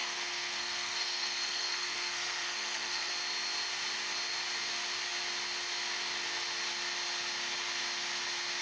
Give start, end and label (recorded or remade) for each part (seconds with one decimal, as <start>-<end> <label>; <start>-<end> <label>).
0.0-3.1 remade; 3.1-8.6 recorded